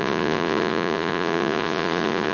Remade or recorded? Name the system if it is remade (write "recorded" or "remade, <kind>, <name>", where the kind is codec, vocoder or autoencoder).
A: remade, vocoder, Vocos